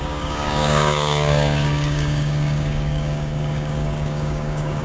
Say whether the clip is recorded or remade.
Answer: remade